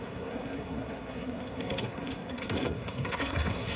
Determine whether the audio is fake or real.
fake